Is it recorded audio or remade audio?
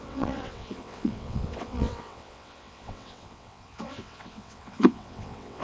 remade